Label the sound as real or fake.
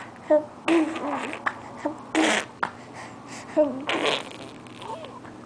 real